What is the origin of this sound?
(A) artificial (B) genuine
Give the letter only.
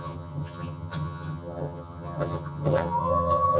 A